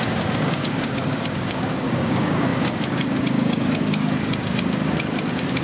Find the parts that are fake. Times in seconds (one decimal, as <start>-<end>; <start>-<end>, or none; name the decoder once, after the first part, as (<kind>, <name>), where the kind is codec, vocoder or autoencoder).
0.0-5.6 (codec, DAC)